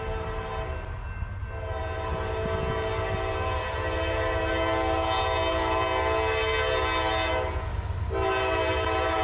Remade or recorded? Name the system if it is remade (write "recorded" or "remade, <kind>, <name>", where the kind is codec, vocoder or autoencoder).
recorded